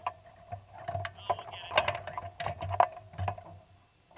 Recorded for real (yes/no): yes